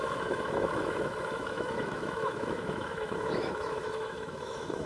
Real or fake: fake